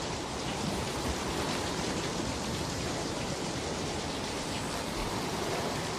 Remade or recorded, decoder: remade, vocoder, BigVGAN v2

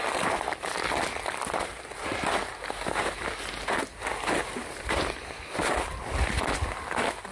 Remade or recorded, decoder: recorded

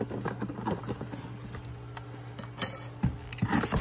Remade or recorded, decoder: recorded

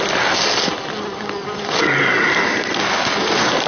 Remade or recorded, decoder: recorded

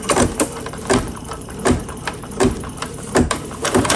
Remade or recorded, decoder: remade, vocoder, BigVGAN v2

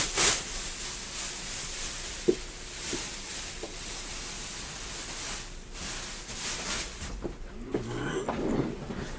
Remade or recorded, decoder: recorded